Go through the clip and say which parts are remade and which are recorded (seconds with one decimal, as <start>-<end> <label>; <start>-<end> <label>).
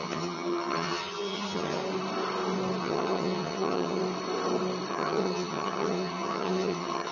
0.0-1.8 remade; 1.8-2.8 recorded; 2.8-4.0 remade; 4.0-4.9 recorded; 4.9-7.1 remade